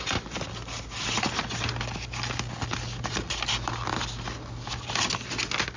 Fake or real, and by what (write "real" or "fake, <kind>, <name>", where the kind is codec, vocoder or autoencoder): real